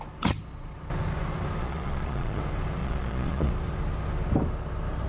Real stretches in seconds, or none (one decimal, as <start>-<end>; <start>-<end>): 0.0-1.6; 2.4-2.8; 3.5-5.1